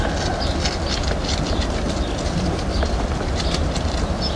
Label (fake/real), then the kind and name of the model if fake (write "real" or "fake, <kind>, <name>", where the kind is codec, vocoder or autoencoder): real